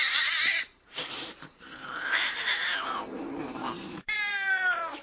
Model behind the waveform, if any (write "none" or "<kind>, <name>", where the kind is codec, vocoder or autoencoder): vocoder, BigVGAN v2